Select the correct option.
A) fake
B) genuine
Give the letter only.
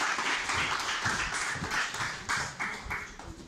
A